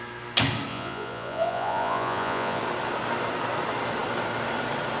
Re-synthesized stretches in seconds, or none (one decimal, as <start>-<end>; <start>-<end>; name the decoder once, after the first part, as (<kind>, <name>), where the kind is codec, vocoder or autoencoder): 0.7-2.6 (vocoder, Vocos)